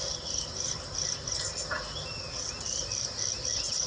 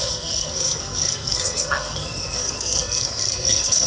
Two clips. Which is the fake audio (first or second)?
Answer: second